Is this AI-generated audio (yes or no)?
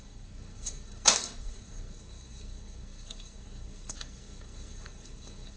yes